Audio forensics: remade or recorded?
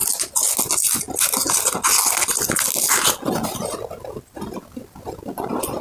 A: recorded